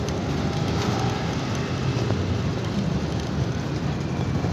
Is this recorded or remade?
recorded